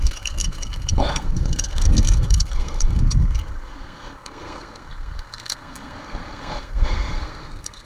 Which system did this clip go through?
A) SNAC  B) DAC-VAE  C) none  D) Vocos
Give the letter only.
A